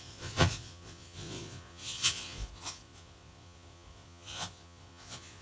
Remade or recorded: remade